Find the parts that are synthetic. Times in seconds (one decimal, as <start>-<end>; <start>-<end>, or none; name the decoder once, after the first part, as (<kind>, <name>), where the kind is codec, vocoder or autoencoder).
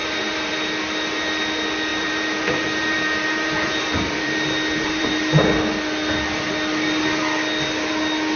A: 0.0-0.5 (vocoder, BigVGAN v2); 1.9-5.4